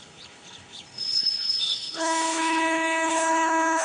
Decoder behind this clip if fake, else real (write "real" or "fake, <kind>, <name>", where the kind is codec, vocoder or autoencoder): fake, codec, HILCodec